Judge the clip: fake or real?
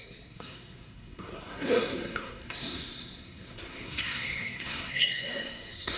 fake